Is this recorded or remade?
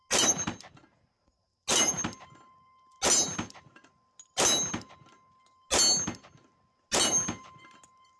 recorded